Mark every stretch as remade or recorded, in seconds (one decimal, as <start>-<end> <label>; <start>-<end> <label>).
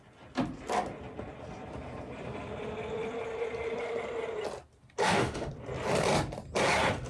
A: 0.0-5.0 recorded; 5.0-5.5 remade; 5.5-7.1 recorded